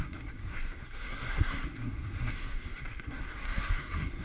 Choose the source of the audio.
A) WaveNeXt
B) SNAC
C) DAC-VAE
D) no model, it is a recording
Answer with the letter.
B